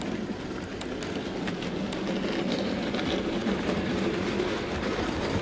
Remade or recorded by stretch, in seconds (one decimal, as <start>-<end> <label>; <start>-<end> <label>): 0.0-0.7 remade; 0.7-2.5 recorded; 2.5-5.4 remade